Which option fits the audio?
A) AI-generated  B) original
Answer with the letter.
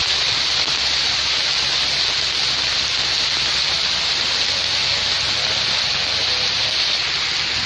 B